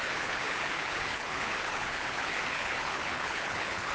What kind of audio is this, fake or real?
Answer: fake